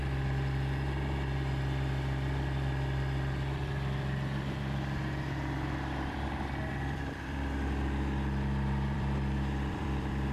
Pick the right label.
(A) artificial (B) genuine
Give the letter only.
A